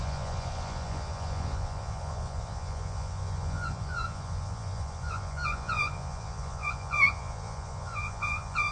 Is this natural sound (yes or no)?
no